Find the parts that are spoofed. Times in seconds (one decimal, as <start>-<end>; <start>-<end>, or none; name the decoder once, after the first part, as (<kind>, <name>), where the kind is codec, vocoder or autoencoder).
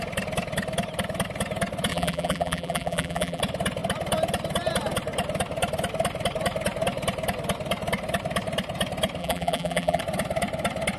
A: 1.9-3.4 (vocoder, BigVGAN v2); 9.2-10.0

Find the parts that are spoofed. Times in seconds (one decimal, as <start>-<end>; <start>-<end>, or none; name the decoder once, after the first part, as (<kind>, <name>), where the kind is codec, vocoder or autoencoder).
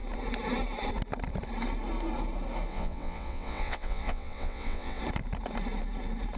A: 2.7-5.0 (vocoder, WaveNeXt)